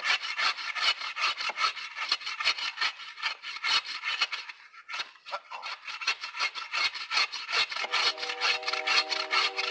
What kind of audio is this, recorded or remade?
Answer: recorded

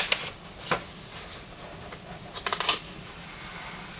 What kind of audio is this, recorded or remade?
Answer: recorded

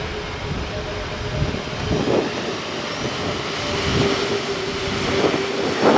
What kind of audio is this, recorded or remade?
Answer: recorded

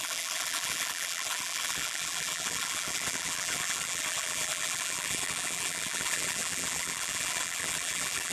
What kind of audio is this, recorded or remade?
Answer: remade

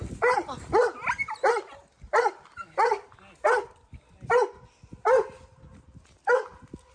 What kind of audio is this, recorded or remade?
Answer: recorded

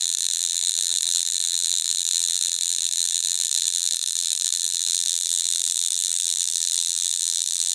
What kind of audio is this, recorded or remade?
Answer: remade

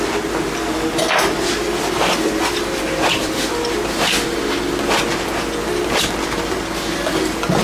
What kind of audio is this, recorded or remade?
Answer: recorded